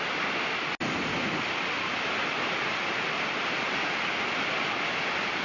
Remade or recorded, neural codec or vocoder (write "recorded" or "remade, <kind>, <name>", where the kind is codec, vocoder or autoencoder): recorded